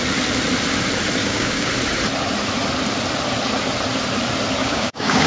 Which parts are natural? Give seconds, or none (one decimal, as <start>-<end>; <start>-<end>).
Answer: 0.0-1.2; 1.7-4.6